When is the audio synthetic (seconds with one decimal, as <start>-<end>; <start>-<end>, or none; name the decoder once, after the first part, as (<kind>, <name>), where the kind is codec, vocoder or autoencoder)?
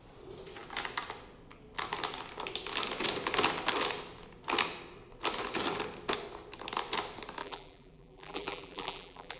7.4-9.4 (vocoder, BigVGAN v2)